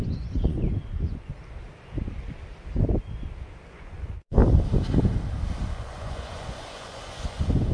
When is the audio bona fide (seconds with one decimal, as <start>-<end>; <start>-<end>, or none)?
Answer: 1.3-3.7; 4.4-5.7